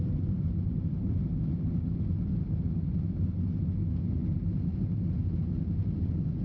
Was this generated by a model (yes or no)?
no